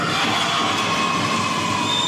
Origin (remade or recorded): recorded